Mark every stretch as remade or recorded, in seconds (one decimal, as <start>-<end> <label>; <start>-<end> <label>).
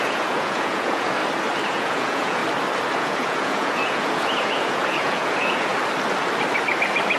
0.0-1.2 remade; 1.2-1.7 recorded; 1.7-2.4 remade; 2.4-3.0 recorded; 3.0-5.7 remade; 5.7-7.2 recorded